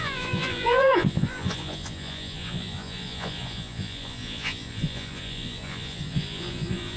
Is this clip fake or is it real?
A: fake